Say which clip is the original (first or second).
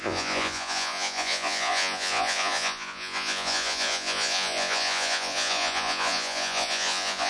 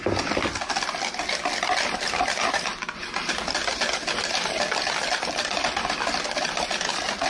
second